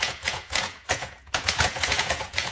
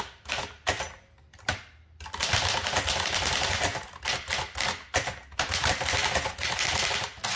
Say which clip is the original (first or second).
second